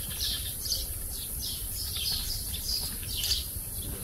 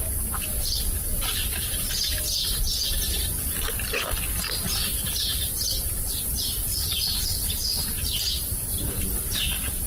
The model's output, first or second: first